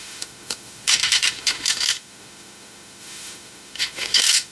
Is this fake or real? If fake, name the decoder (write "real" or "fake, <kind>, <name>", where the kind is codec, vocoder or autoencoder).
fake, autoencoder, DAC-VAE